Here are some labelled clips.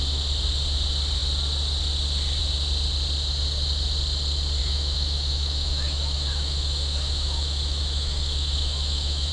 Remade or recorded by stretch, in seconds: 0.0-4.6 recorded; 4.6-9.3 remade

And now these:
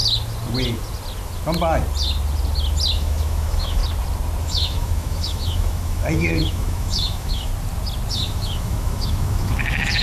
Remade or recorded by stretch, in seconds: 0.0-2.9 recorded; 2.9-3.8 remade; 3.8-4.4 recorded; 4.4-7.5 remade; 7.5-8.1 recorded; 8.1-10.0 remade